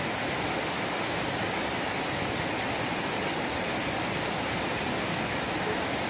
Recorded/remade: recorded